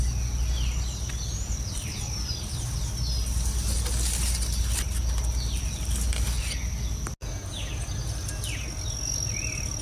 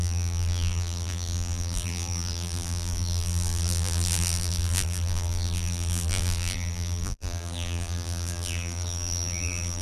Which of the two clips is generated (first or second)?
second